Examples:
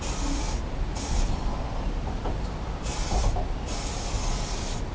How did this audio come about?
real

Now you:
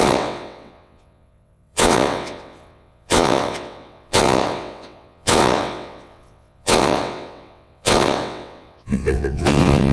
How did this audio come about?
fake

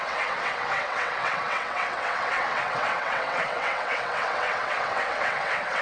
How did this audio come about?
fake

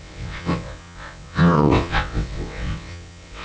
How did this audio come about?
fake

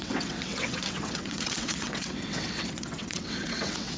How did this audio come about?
fake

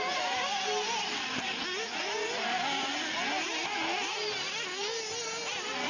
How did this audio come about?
real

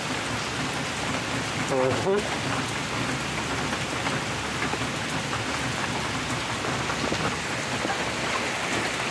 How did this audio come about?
real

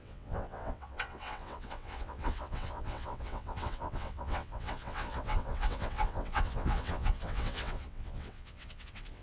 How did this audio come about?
fake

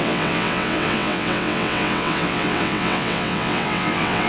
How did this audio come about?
fake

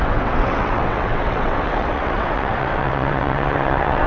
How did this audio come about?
fake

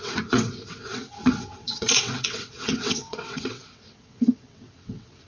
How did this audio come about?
fake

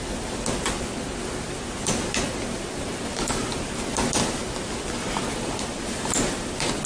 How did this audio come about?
real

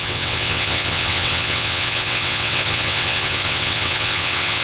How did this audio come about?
fake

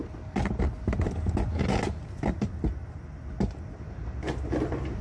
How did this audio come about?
real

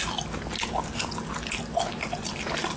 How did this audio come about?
real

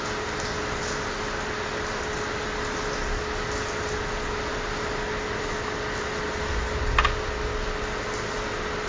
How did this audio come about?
real